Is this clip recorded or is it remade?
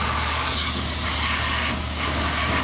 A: remade